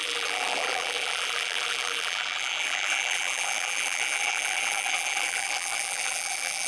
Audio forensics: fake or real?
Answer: fake